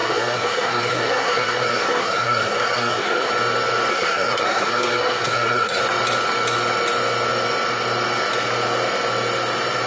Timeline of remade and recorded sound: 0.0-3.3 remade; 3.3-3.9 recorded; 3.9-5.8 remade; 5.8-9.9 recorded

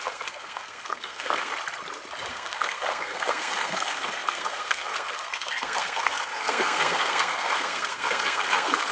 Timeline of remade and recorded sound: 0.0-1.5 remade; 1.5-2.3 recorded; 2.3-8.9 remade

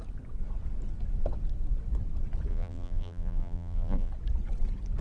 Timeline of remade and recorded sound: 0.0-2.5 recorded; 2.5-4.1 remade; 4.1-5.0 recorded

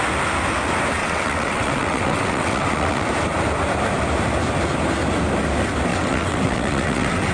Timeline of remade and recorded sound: 0.0-1.0 recorded; 1.0-3.1 remade; 3.1-5.9 recorded; 5.9-7.3 remade

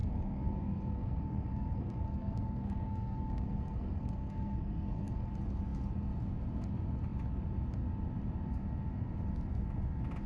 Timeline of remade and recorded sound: 0.0-5.3 remade; 5.3-10.3 recorded